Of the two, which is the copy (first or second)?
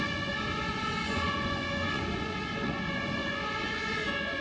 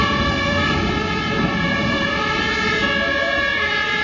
first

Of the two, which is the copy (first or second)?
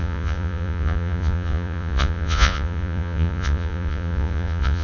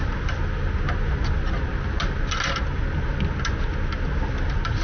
first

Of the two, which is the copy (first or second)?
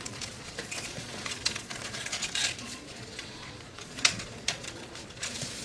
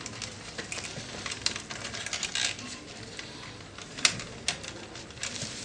first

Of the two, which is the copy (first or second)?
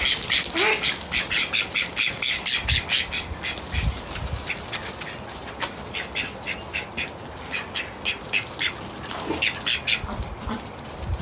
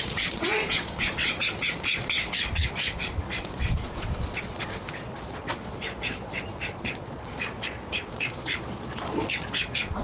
second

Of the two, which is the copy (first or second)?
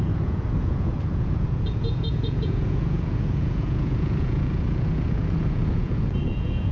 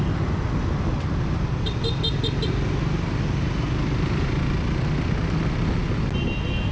first